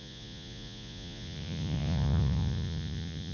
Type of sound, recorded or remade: remade